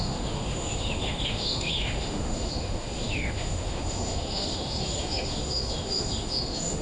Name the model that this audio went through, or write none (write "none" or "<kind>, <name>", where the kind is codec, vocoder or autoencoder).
autoencoder, DAC-VAE